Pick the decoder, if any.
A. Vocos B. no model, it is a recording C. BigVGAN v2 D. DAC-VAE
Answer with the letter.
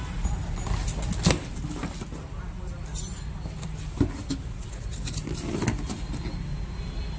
B